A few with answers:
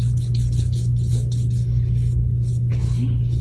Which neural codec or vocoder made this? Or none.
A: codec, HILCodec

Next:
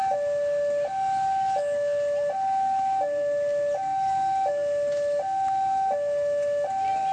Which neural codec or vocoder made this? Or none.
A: none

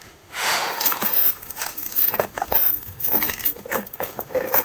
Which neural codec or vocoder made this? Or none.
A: autoencoder, DAC-VAE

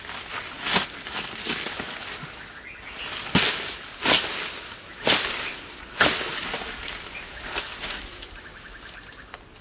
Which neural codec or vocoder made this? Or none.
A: none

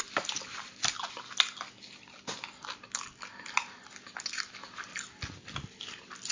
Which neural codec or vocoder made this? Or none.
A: none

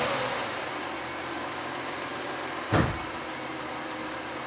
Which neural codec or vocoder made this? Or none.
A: none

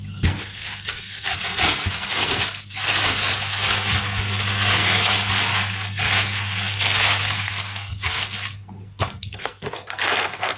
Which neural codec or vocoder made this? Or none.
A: codec, SNAC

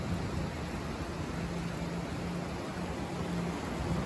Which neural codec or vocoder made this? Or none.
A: none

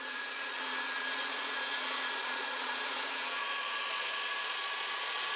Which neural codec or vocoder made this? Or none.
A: vocoder, Vocos